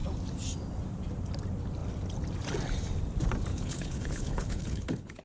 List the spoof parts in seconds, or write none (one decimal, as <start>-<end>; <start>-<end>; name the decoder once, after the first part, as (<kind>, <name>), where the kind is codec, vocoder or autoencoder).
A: 3.5-5.2 (codec, HILCodec)